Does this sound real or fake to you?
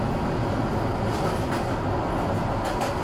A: real